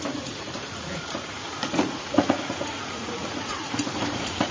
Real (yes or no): no